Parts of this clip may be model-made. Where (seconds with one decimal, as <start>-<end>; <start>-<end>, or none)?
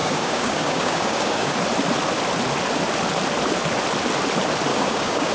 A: 0.0-1.5; 4.7-5.3